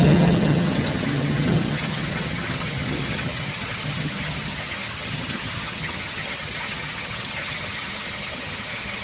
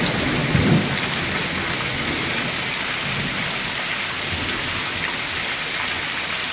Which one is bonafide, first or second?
second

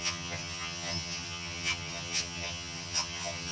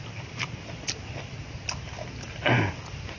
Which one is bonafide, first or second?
second